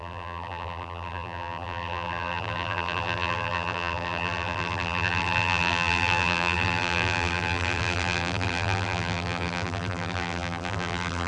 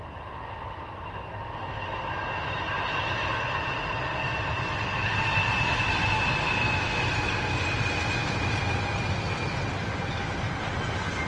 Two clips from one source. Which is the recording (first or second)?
second